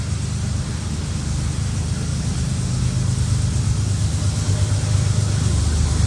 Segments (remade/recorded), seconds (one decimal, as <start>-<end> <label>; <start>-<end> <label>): 0.0-6.1 recorded